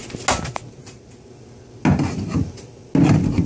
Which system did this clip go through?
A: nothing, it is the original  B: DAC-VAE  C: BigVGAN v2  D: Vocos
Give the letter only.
A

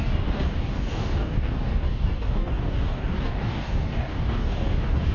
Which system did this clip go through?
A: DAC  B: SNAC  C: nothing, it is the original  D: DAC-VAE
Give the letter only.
A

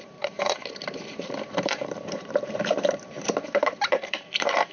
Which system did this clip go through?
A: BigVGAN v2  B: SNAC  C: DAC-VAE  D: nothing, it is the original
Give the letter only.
A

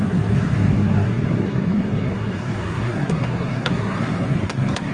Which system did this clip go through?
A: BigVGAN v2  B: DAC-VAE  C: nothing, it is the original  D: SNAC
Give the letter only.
D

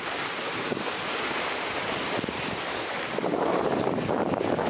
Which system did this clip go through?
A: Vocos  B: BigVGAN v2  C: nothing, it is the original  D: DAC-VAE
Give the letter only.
B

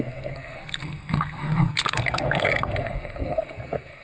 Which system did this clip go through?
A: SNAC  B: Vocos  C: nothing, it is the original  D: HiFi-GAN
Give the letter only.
A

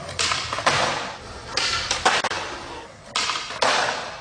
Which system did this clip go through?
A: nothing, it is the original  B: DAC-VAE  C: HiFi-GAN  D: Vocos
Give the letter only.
A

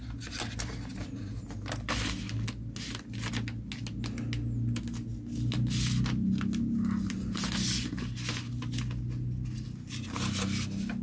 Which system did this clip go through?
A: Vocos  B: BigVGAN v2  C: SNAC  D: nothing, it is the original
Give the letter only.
D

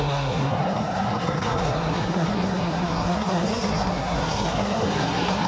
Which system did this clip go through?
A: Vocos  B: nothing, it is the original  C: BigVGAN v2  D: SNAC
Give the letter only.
D